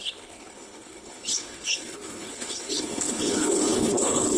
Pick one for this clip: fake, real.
fake